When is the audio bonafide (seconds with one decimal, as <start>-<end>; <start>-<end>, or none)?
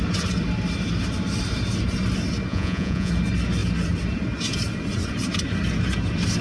0.0-2.5; 3.1-6.4